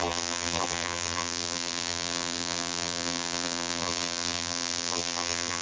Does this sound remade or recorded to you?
remade